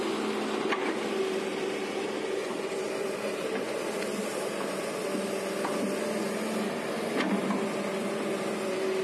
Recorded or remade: recorded